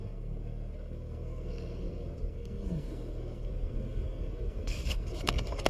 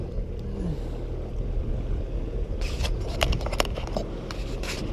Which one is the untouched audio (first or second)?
second